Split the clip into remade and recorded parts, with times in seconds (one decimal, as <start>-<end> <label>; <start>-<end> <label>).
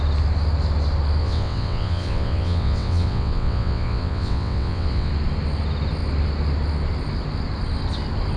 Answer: 0.0-1.2 recorded; 1.2-5.1 remade; 5.1-8.4 recorded